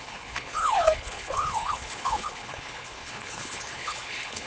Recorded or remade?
remade